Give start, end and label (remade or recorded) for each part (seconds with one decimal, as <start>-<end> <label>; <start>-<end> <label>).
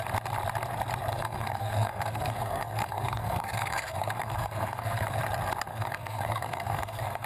0.0-1.1 recorded; 1.1-5.2 remade; 5.2-5.7 recorded; 5.7-7.3 remade